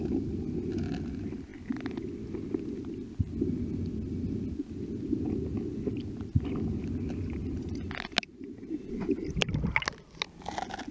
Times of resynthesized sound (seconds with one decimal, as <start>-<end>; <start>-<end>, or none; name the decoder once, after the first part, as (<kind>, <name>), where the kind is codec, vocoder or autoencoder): 8.3-8.9 (vocoder, BigVGAN v2)